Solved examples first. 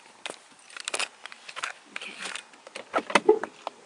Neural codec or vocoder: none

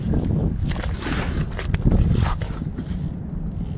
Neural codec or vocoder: none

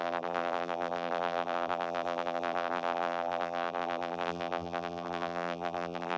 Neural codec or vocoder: vocoder, BigVGAN v2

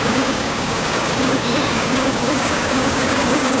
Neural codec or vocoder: codec, DAC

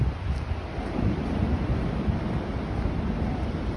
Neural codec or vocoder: none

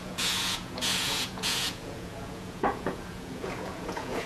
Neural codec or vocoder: vocoder, Vocos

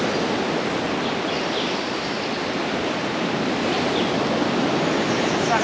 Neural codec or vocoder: none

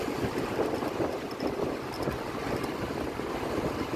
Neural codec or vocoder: none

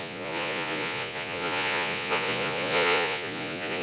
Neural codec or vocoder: vocoder, Vocos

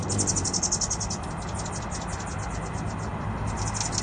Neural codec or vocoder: none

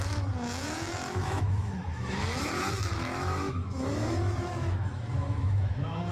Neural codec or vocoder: autoencoder, DAC-VAE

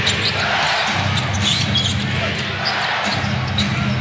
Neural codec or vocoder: none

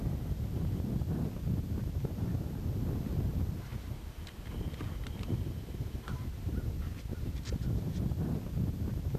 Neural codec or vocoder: none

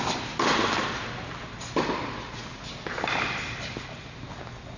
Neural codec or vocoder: none